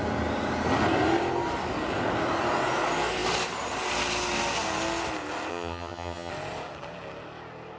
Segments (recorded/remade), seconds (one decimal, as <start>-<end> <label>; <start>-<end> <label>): 0.0-5.5 recorded; 5.5-6.3 remade; 6.3-7.8 recorded